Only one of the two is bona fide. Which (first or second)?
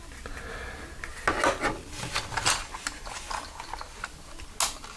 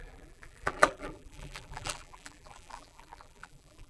first